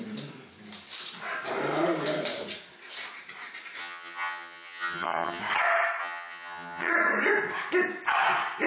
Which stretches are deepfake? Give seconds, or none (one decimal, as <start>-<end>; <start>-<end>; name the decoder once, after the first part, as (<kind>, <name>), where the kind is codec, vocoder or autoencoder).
3.8-5.4 (vocoder, HiFi-GAN); 6.0-6.9